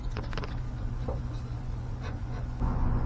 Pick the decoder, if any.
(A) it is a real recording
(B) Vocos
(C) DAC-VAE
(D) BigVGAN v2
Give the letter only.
B